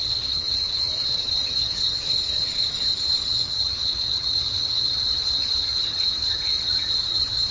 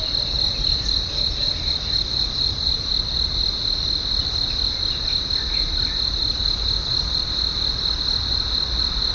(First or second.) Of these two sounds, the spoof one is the first